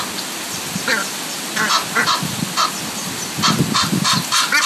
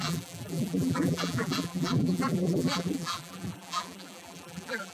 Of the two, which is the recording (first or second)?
first